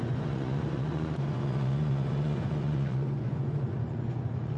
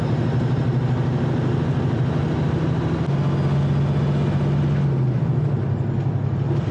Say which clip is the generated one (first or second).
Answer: first